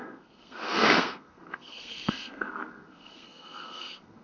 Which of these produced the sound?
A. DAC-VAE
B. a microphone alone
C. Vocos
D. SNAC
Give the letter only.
D